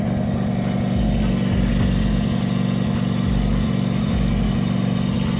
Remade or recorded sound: recorded